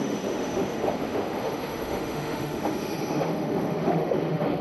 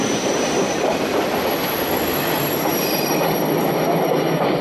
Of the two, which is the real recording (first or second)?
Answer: second